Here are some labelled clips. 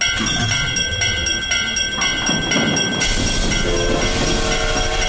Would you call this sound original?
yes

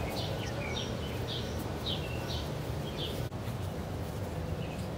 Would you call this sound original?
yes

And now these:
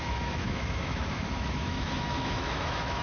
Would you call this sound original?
no